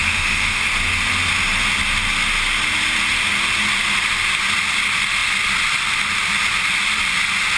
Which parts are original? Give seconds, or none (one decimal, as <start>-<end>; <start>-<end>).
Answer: 0.6-7.6